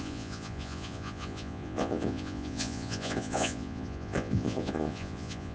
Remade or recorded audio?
remade